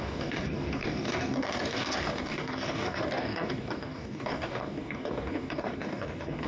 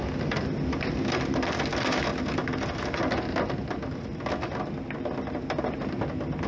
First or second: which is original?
second